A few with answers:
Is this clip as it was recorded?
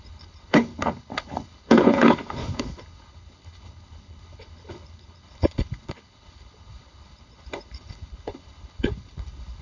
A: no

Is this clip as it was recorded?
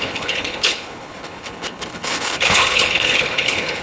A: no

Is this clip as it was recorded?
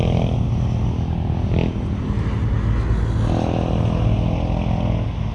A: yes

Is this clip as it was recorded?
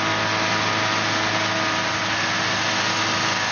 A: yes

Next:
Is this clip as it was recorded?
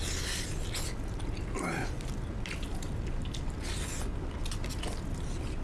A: yes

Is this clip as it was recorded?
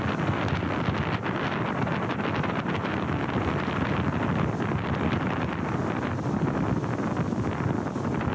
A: yes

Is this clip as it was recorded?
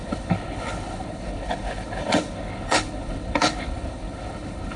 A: no